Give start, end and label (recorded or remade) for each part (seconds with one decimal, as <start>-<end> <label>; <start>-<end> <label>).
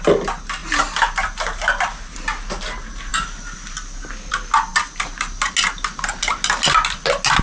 0.0-7.4 recorded